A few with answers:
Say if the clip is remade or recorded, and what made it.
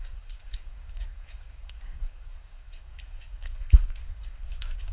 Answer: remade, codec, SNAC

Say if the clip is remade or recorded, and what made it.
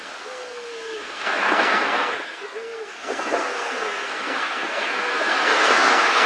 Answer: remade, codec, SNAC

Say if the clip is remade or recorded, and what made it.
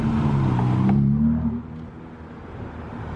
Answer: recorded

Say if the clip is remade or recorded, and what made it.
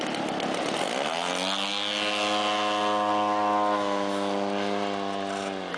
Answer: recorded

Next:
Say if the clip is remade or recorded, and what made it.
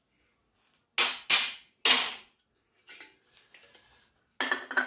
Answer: recorded